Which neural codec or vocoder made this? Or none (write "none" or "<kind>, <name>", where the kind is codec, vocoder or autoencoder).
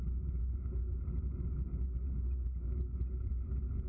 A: none